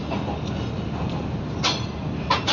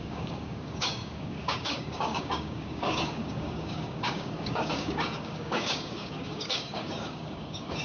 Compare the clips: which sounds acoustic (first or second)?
first